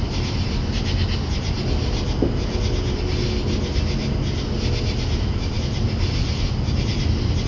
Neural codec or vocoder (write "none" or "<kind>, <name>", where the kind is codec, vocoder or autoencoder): none